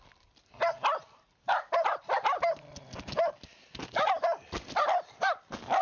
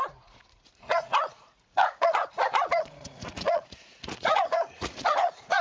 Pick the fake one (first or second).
second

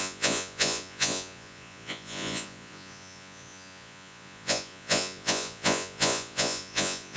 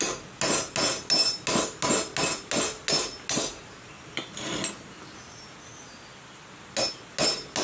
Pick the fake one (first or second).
first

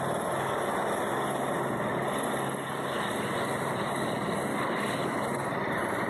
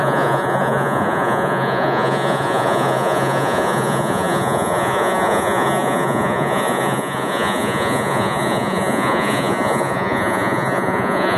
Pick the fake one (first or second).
second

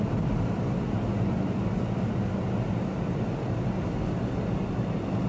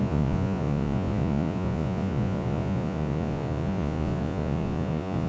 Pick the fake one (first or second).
second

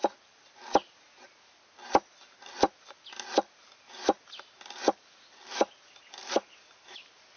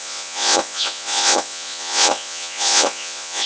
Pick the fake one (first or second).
second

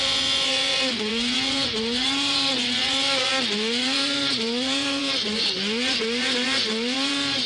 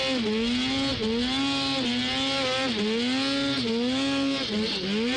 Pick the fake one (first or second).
first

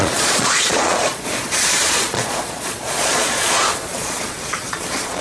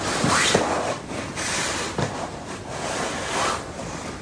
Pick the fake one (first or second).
first